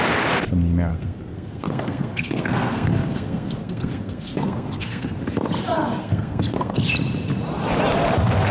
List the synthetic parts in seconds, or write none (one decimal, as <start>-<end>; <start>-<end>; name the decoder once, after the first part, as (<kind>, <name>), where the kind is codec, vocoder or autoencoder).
0.9-5.2 (codec, SNAC); 6.0-6.8